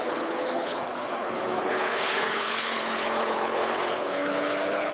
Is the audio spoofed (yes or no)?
yes